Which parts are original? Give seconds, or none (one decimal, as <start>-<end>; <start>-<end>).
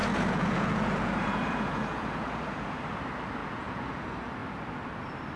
2.8-3.4; 4.0-5.4